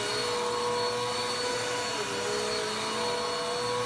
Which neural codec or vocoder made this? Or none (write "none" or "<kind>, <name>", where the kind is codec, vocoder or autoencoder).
none